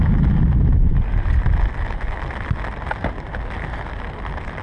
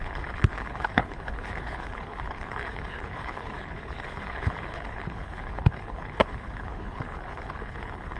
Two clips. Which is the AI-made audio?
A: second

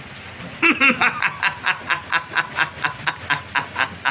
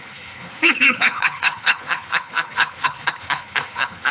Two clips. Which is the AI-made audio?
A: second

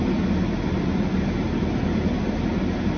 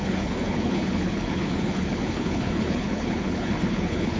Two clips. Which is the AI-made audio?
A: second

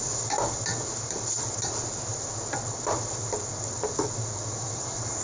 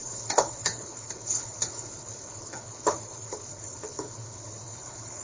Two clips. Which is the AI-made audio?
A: second